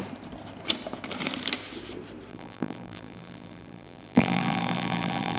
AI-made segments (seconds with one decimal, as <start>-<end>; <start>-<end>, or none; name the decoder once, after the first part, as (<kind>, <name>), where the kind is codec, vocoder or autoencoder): 2.3-5.4 (vocoder, BigVGAN v2)